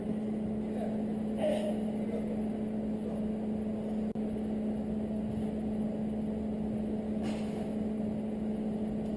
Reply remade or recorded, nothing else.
recorded